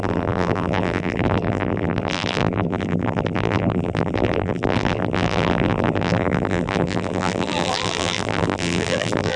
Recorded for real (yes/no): no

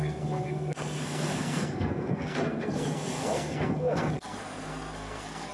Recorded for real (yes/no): no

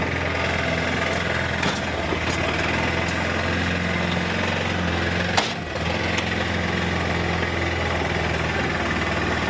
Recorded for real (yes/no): yes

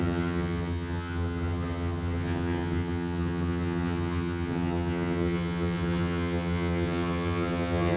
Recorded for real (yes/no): no